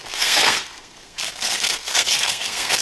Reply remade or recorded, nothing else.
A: remade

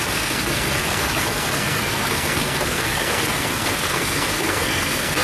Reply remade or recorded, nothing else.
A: remade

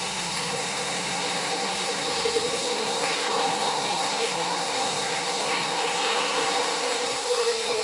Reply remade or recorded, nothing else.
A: remade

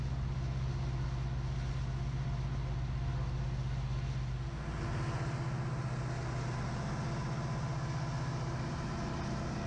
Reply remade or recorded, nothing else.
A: recorded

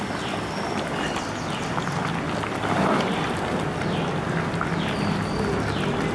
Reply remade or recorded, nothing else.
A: recorded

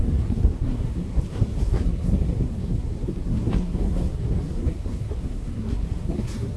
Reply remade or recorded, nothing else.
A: remade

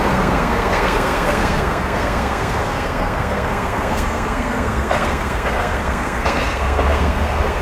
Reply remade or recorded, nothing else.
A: remade